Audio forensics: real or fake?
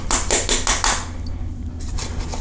real